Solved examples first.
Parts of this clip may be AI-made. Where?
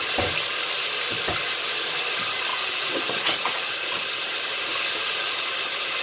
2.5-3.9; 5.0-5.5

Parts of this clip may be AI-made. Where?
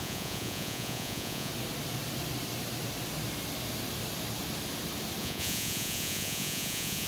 0.0-1.5; 5.2-7.1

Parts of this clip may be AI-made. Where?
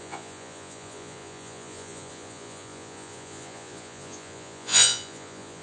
0.0-5.6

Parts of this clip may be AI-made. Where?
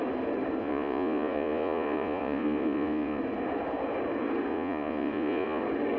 0.6-3.2; 4.5-5.6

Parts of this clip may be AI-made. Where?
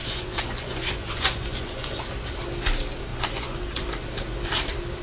0.0-2.0; 3.1-3.7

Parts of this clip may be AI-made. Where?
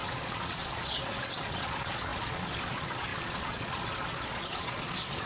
0.0-5.3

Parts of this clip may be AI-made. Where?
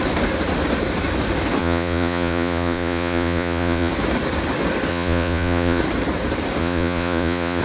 1.6-3.9; 4.9-5.8; 6.6-7.6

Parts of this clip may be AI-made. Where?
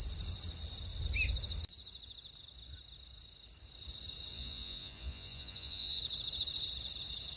4.3-6.0